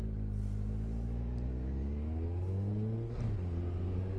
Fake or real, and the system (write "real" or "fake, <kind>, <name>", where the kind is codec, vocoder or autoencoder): real